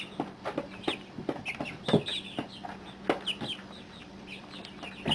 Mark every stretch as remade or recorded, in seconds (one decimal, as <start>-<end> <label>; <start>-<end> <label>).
0.0-5.1 recorded